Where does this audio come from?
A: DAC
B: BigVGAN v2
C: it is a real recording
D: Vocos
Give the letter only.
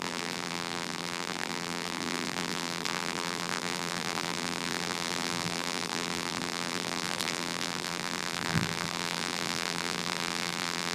B